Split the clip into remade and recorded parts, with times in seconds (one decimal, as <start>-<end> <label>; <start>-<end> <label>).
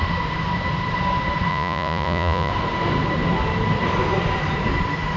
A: 0.0-1.5 recorded; 1.5-2.5 remade; 2.5-5.2 recorded